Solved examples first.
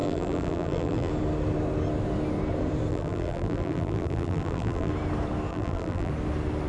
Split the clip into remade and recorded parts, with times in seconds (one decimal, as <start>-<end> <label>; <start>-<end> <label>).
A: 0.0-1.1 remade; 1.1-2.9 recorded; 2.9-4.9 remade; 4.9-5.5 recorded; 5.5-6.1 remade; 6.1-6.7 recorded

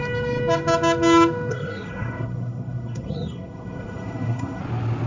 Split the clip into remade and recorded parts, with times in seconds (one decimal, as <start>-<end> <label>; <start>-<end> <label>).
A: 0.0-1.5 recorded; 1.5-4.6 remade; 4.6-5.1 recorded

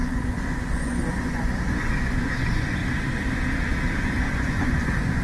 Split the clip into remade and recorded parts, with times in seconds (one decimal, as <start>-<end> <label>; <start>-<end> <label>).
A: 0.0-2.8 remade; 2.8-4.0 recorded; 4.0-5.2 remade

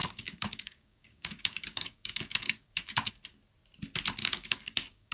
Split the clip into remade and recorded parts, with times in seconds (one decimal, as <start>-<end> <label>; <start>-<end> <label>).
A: 0.0-3.1 remade; 3.1-4.2 recorded; 4.2-5.1 remade

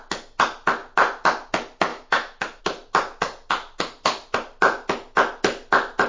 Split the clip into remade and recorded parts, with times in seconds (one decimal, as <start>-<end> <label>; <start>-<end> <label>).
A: 0.0-1.9 recorded; 1.9-2.6 remade; 2.6-6.1 recorded